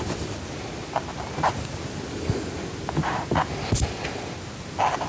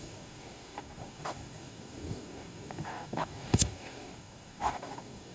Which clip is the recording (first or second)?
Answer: first